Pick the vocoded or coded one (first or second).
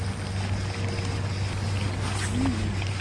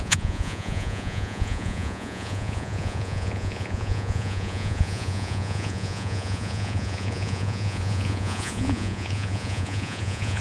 second